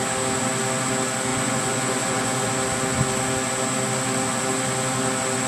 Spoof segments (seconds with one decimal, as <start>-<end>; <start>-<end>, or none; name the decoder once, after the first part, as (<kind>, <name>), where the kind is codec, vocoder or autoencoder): 1.3-2.5 (vocoder, Vocos)